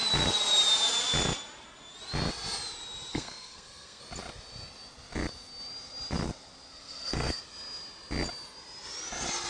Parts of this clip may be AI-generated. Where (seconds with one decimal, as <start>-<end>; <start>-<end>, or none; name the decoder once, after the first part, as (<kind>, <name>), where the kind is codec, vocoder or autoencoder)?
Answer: 3.1-4.0 (codec, SNAC); 6.7-7.4